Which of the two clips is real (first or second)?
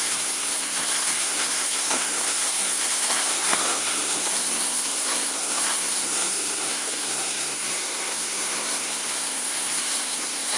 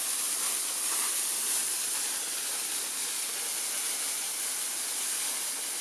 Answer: second